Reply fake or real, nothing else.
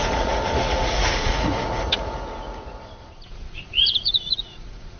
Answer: fake